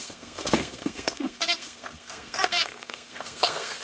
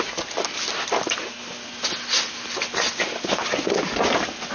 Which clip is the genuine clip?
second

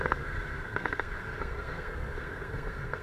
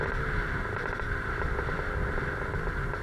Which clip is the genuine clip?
second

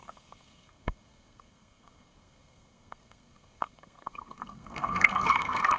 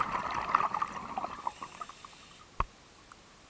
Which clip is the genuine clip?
second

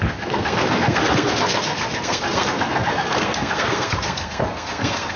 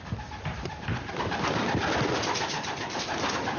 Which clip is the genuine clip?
second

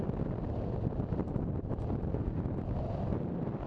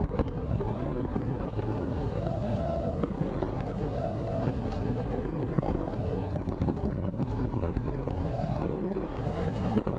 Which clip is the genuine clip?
first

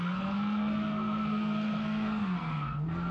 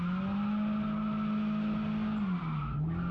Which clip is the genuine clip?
second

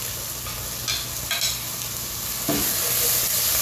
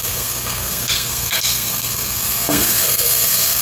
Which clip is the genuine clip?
first